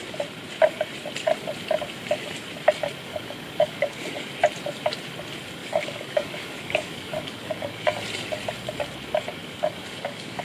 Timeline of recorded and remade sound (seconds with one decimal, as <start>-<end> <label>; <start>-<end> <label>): 0.0-3.1 recorded; 3.1-4.3 remade; 4.3-5.6 recorded; 5.6-8.1 remade; 8.1-9.4 recorded; 9.4-10.4 remade